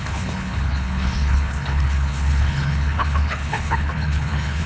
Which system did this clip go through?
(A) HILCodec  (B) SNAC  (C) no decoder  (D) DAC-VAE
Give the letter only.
A